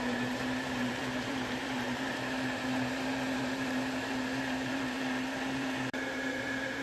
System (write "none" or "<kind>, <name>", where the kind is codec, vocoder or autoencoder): vocoder, BigVGAN v2